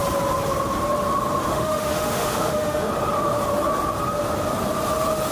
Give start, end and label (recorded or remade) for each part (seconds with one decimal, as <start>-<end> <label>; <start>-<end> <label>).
0.0-1.5 recorded; 1.5-2.9 remade; 2.9-5.3 recorded